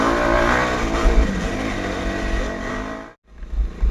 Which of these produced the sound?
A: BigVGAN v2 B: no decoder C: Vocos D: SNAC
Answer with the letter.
B